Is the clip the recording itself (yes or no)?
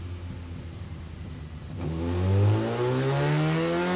yes